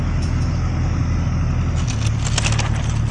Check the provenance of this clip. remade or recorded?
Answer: recorded